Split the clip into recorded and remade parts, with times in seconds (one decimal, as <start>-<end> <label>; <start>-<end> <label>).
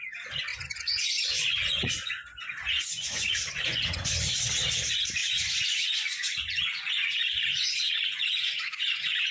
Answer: 0.0-0.5 recorded; 0.5-4.4 remade; 4.4-5.2 recorded; 5.2-9.3 remade